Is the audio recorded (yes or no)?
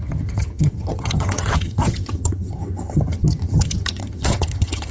no